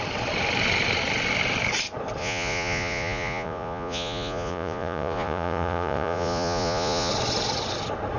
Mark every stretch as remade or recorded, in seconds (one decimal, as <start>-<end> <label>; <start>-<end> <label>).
0.0-2.2 recorded; 2.2-7.1 remade; 7.1-8.2 recorded